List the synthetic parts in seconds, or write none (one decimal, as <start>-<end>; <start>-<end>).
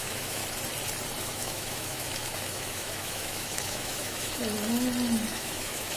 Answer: 0.0-0.4; 1.2-4.4; 5.3-6.0